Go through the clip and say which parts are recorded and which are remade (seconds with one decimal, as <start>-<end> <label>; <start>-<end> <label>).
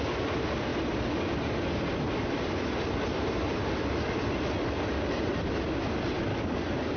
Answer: 0.0-6.3 recorded; 6.3-7.0 remade